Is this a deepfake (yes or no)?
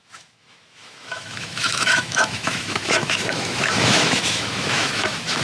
yes